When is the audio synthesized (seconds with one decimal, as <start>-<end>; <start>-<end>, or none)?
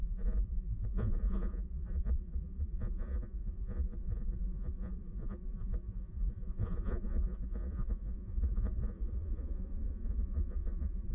0.0-11.1